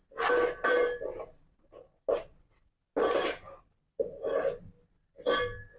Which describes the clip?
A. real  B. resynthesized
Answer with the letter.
A